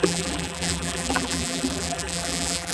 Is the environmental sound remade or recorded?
remade